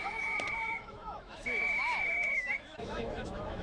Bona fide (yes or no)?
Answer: no